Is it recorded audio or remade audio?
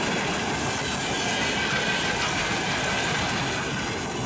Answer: recorded